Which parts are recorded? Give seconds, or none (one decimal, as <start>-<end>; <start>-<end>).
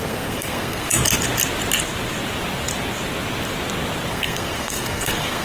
0.9-4.1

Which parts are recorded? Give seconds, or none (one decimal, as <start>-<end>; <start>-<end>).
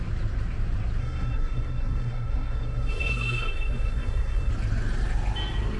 0.0-1.0; 4.5-5.8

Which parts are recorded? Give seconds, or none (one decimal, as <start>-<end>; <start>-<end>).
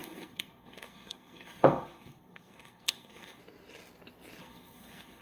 3.4-4.4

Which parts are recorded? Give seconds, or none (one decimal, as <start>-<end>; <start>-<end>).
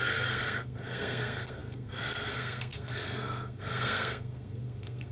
none